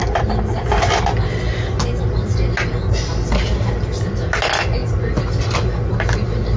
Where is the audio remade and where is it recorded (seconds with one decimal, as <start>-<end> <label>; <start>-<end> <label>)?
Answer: 0.0-6.6 recorded